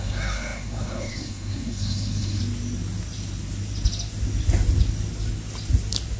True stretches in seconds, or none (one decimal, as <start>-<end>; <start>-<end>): 2.4-6.2